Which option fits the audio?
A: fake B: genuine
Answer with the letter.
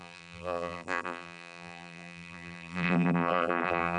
A